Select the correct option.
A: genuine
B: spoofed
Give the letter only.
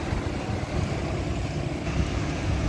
A